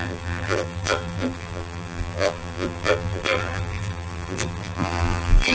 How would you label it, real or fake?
fake